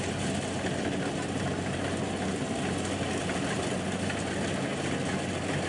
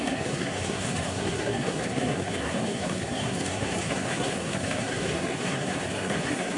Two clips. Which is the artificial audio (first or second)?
second